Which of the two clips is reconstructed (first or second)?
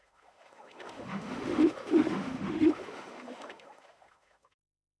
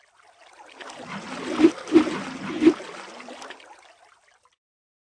first